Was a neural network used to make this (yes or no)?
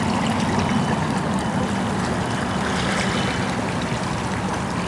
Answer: no